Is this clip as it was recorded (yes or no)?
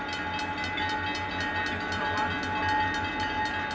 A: yes